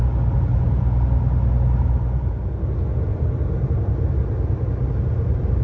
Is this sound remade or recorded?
recorded